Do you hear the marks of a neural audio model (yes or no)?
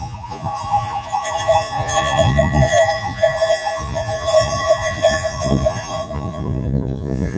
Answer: yes